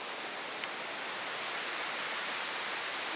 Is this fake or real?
real